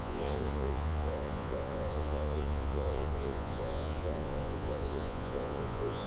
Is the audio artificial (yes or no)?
yes